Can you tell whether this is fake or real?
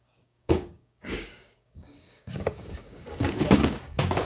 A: fake